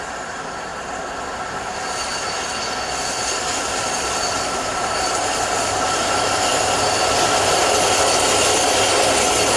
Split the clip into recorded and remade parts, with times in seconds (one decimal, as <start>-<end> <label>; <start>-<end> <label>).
0.0-0.7 remade; 0.7-3.0 recorded; 3.0-6.5 remade; 6.5-9.6 recorded